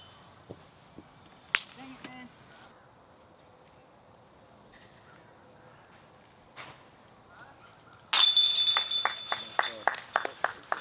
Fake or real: real